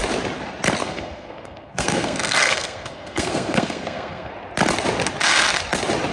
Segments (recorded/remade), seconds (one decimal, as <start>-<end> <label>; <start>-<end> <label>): 0.0-0.8 recorded; 0.8-4.3 remade; 4.3-6.1 recorded